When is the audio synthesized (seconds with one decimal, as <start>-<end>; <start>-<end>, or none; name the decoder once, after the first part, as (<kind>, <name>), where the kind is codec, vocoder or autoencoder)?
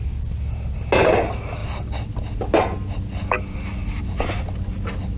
none